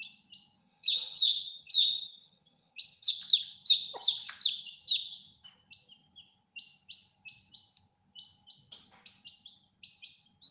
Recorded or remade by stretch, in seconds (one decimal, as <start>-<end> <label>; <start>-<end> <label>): 0.0-0.6 recorded; 0.6-3.2 remade; 3.2-10.5 recorded